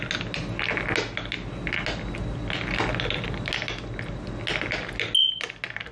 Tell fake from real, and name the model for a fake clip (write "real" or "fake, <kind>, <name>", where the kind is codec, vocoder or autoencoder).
real